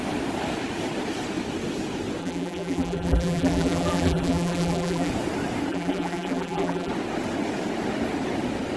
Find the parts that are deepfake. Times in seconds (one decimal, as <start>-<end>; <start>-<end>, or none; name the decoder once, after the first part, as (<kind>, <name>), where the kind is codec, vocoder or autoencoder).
2.2-5.1 (vocoder, BigVGAN v2); 5.7-6.9